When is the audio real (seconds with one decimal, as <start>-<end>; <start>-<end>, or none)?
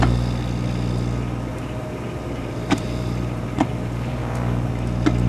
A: 0.0-1.5; 4.7-5.3